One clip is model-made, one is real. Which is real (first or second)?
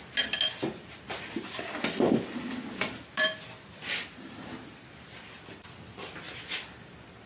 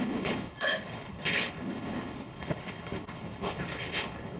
first